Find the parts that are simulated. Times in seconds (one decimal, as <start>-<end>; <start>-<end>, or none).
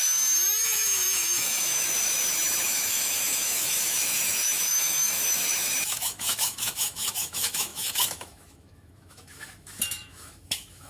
0.0-10.9